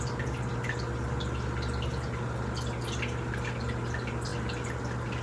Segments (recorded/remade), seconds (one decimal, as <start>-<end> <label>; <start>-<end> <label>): 0.0-5.2 recorded